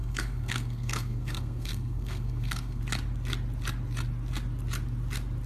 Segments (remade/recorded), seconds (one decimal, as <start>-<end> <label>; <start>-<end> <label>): 0.0-2.8 remade; 2.8-5.5 recorded